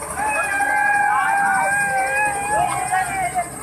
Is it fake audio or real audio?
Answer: real